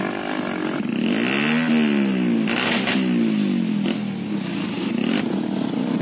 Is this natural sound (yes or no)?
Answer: yes